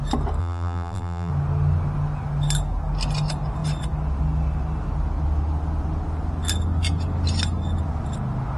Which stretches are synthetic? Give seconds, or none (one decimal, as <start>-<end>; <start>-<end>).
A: 0.4-1.3